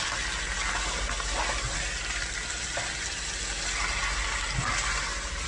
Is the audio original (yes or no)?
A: yes